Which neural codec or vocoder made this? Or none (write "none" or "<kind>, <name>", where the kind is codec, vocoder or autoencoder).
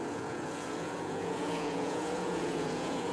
vocoder, Vocos